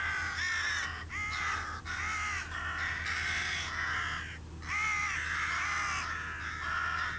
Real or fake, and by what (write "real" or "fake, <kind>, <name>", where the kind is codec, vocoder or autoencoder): real